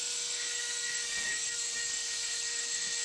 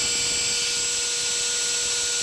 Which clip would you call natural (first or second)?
second